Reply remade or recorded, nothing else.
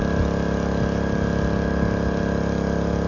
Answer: recorded